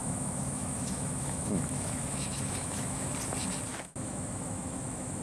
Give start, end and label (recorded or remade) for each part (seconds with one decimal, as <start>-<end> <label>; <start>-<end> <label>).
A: 0.0-3.1 remade; 3.1-3.7 recorded; 3.7-5.2 remade